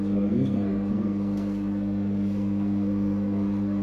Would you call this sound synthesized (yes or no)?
yes